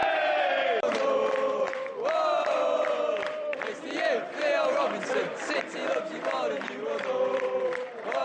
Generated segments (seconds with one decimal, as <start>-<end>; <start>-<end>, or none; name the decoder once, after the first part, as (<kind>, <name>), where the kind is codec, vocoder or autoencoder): 0.0-8.2 (vocoder, BigVGAN v2)